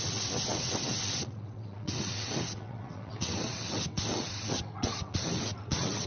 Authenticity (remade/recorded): remade